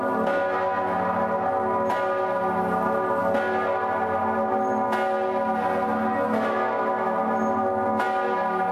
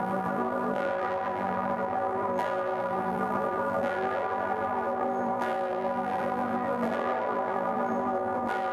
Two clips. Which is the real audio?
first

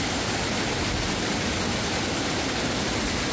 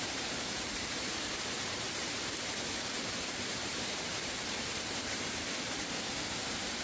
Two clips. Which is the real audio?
first